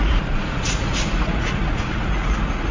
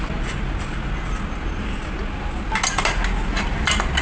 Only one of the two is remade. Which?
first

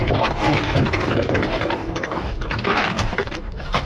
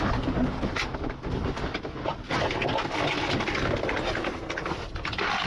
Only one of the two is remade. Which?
first